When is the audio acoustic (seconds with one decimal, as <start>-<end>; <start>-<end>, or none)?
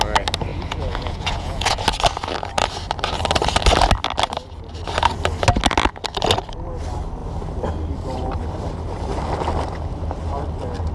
0.0-0.5; 1.8-10.9